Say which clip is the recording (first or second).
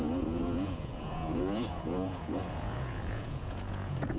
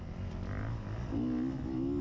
second